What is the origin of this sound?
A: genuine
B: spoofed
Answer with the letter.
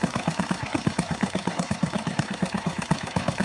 B